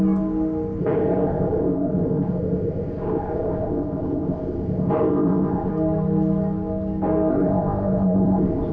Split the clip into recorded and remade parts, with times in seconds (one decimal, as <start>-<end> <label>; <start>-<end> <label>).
0.0-0.8 recorded; 0.8-5.7 remade; 5.7-7.3 recorded; 7.3-8.7 remade